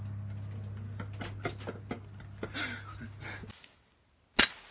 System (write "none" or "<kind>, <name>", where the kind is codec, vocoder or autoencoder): none